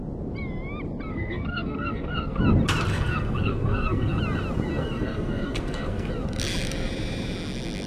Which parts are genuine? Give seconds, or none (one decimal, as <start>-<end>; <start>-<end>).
0.0-1.1; 2.4-2.9; 4.2-4.7; 6.1-7.9

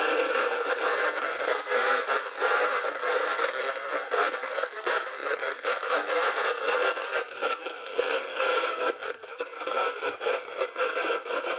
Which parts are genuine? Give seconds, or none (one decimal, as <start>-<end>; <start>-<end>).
none

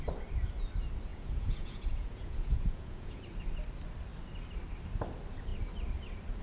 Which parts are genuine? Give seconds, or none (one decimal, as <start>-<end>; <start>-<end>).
0.0-1.1; 3.2-6.4

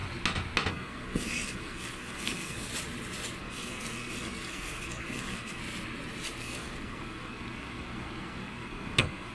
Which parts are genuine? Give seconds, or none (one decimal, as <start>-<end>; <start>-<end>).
0.0-0.7; 2.7-3.4; 5.6-6.4

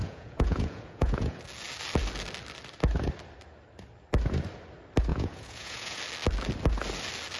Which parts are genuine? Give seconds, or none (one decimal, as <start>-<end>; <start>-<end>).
1.4-5.1; 6.0-7.4